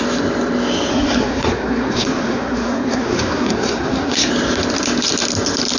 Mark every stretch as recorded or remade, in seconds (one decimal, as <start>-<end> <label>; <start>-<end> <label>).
0.0-0.9 recorded; 0.9-4.3 remade; 4.3-5.8 recorded